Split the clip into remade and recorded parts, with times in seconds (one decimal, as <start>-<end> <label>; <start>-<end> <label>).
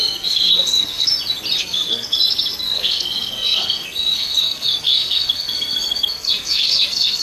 0.0-1.1 remade; 1.1-1.6 recorded; 1.6-7.2 remade